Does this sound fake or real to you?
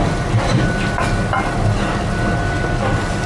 real